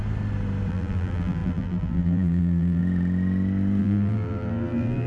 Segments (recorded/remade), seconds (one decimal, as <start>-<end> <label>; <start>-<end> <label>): 0.0-0.7 recorded; 0.7-2.8 remade; 2.8-3.8 recorded; 3.8-5.1 remade